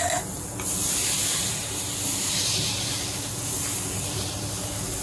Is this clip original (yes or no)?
yes